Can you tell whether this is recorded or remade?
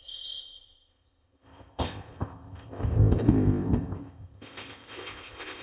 remade